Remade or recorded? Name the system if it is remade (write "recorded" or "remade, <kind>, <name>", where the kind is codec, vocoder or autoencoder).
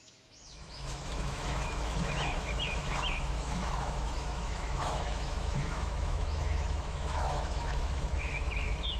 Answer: remade, autoencoder, DAC-VAE